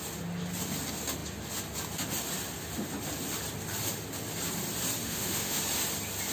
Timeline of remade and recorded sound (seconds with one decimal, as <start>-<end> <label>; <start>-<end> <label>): 0.0-5.0 recorded; 5.0-5.6 remade; 5.6-6.3 recorded